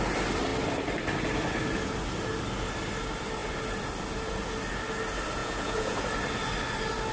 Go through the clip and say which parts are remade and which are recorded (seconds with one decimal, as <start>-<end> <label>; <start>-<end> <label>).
0.0-5.4 recorded; 5.4-6.0 remade; 6.0-7.1 recorded